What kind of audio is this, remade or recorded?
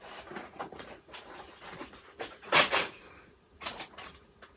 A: remade